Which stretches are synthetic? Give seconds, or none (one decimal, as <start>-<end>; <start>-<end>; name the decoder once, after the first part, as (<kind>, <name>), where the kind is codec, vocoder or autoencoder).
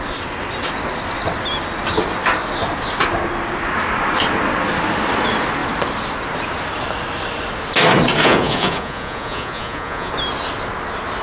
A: 8.2-10.1 (vocoder, Vocos)